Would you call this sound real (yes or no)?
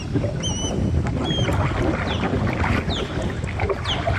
yes